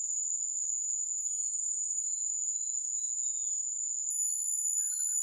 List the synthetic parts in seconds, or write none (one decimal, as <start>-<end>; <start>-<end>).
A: 0.7-3.7